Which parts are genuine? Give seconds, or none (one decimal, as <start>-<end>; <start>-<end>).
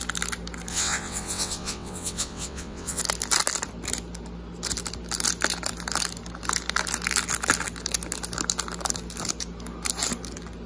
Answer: 0.0-0.7; 3.0-10.7